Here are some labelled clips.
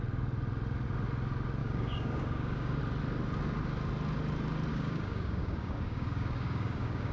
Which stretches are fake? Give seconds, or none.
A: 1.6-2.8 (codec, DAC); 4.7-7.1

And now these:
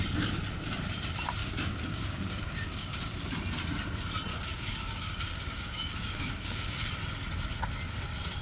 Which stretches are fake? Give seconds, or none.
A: 1.4-3.1 (codec, DAC); 4.3-6.9

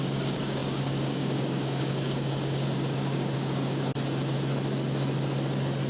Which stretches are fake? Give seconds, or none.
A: 0.0-3.9 (codec, DAC)

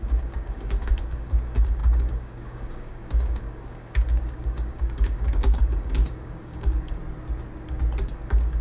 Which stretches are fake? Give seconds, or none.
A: 0.0-7.0 (codec, DAC); 8.0-8.6